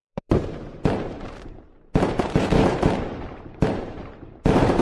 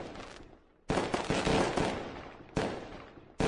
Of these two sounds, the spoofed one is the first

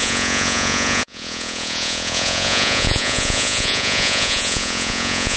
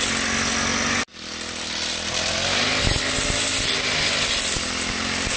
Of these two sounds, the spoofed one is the first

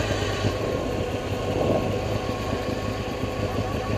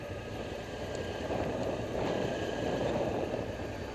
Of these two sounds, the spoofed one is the second